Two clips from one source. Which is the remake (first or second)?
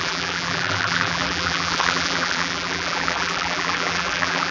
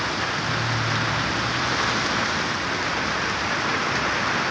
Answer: first